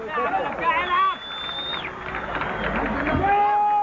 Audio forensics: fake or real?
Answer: real